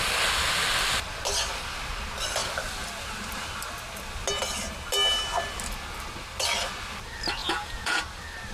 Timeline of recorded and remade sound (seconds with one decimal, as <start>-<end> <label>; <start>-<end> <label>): 0.0-7.4 recorded; 7.4-8.0 remade; 8.0-8.5 recorded